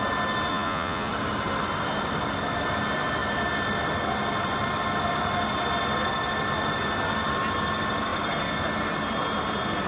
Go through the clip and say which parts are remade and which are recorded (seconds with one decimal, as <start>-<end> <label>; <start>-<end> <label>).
0.0-0.5 recorded; 0.5-1.1 remade; 1.1-9.9 recorded